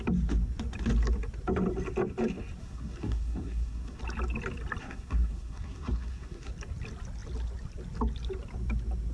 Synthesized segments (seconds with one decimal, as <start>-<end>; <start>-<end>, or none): 2.6-4.0; 4.8-6.5

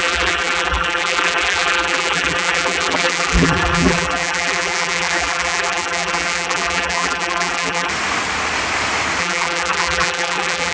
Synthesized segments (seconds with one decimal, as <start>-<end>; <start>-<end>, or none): 0.0-7.9; 9.2-10.7

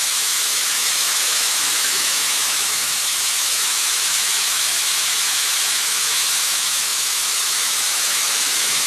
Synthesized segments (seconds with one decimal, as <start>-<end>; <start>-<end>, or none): 0.0-8.9

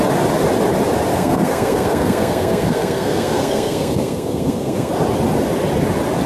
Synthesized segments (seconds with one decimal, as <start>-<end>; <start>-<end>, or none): 1.1-4.9

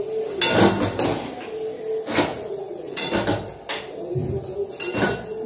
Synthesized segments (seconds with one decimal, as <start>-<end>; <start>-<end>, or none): 2.3-3.1

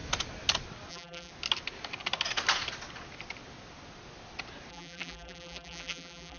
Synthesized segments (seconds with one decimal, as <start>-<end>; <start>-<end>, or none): 0.9-1.3; 4.7-6.4

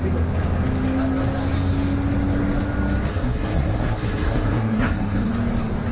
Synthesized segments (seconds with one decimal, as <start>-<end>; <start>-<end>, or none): 3.1-5.3

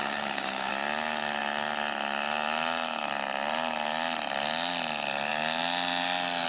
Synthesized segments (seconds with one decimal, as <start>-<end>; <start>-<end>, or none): 0.0-0.7